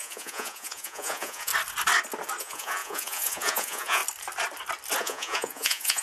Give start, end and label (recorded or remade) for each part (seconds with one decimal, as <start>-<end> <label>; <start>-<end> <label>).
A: 0.0-1.5 remade; 1.5-2.4 recorded; 2.4-4.0 remade; 4.0-5.0 recorded; 5.0-6.0 remade